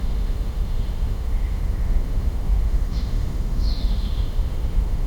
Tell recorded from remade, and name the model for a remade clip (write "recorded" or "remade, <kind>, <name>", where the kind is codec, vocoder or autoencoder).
remade, autoencoder, DAC-VAE